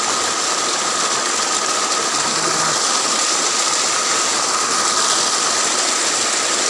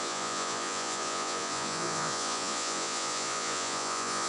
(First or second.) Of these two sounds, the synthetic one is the second